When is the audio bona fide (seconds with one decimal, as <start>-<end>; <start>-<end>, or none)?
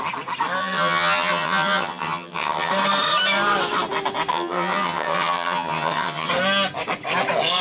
0.0-0.6; 2.7-4.3; 6.3-7.6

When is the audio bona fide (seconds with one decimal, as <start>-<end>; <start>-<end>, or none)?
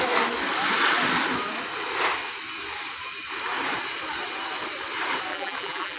0.0-5.3